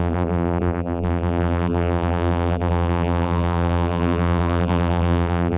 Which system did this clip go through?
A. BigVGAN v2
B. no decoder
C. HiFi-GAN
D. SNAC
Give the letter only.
A